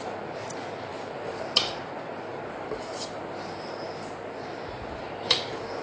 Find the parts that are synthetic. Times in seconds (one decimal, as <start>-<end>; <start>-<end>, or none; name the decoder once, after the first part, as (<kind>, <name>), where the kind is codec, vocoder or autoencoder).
0.9-1.4 (vocoder, BigVGAN v2)